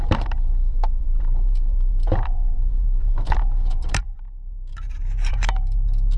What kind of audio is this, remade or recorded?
remade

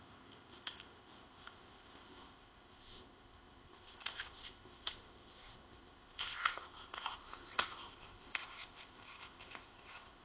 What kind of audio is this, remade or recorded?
remade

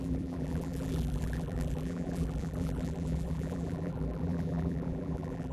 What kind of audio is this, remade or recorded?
remade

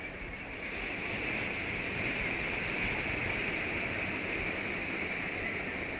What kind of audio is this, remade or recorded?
recorded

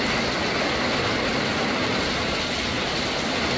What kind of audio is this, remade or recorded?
recorded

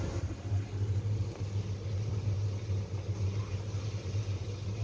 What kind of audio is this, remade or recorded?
recorded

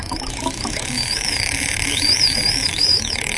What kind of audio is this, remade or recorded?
remade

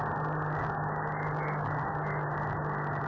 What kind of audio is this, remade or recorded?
recorded